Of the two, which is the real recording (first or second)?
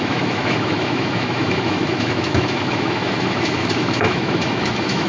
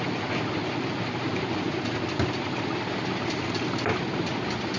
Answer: second